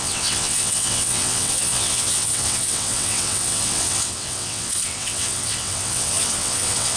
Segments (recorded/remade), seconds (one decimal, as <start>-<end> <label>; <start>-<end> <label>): 0.0-7.0 remade

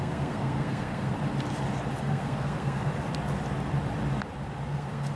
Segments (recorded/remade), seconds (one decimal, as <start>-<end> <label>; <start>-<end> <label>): 0.0-1.1 remade; 1.1-2.0 recorded; 2.0-2.9 remade; 2.9-4.7 recorded; 4.7-5.2 remade

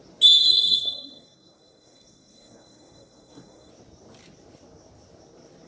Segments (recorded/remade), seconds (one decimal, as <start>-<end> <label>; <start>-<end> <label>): 0.0-0.5 recorded; 0.5-3.7 remade; 3.7-5.7 recorded

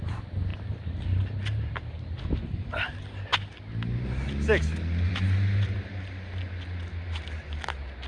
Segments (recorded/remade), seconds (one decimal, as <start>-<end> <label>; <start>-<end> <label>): 0.0-8.1 recorded

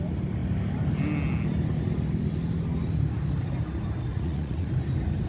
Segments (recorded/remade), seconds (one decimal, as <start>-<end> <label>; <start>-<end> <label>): 0.0-4.1 recorded; 4.1-4.7 remade; 4.7-5.3 recorded

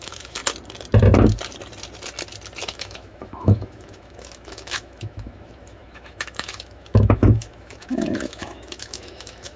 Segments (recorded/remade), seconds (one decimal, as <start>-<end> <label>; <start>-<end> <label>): 0.0-0.4 remade; 0.4-2.6 recorded; 2.6-9.6 remade

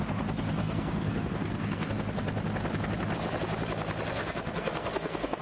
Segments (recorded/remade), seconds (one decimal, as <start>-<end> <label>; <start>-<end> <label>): 0.0-0.6 recorded; 0.6-1.9 remade; 1.9-4.2 recorded; 4.2-5.4 remade

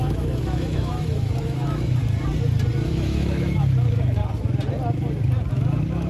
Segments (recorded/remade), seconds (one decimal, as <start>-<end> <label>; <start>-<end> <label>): 0.0-2.0 remade; 2.0-2.9 recorded; 2.9-4.2 remade; 4.2-5.5 recorded; 5.5-6.1 remade